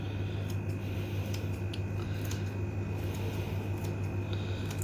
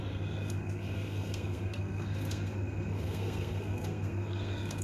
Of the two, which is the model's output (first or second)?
second